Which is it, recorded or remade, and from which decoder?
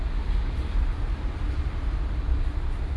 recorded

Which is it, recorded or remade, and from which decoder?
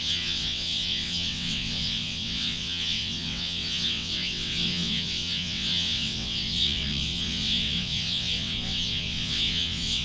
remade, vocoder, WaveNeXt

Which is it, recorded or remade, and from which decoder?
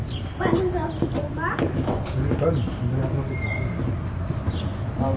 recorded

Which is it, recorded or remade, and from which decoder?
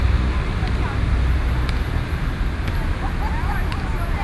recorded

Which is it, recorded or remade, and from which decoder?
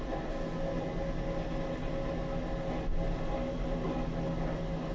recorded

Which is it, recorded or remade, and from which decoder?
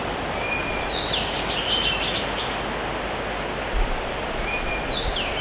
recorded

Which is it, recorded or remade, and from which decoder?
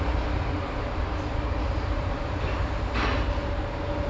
recorded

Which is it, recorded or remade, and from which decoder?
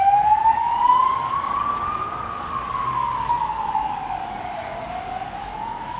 remade, codec, DAC